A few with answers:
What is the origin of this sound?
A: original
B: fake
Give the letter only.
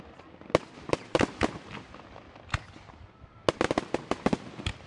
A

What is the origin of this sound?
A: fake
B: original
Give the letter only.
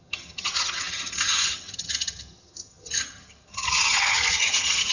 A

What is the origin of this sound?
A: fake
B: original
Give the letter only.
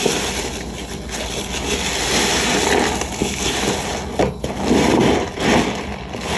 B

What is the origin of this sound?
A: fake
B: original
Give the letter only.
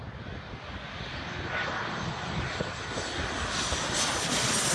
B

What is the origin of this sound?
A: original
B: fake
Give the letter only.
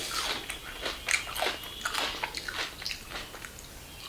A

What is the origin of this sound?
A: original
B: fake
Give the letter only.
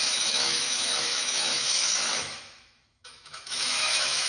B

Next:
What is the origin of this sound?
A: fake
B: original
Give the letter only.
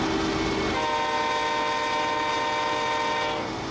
B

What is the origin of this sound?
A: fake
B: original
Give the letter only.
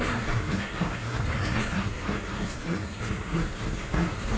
A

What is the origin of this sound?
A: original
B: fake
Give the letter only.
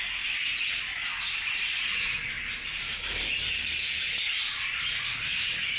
A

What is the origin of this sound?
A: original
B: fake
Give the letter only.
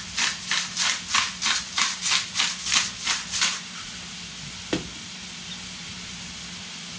A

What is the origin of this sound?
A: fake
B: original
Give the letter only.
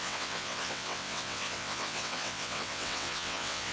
A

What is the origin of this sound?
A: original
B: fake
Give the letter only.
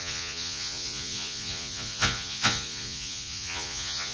B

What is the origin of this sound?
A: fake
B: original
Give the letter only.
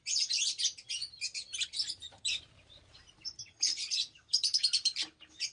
A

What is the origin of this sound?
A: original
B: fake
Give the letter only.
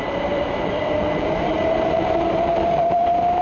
B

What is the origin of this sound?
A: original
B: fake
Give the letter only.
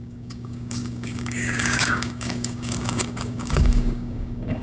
B